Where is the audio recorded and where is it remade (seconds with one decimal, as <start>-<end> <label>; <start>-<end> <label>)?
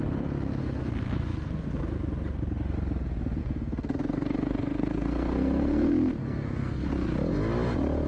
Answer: 0.0-0.6 recorded; 0.6-1.7 remade; 1.7-3.4 recorded; 3.4-6.9 remade; 6.9-8.1 recorded